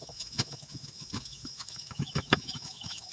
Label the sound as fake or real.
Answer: fake